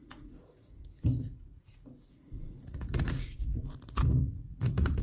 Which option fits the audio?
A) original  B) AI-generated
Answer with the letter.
B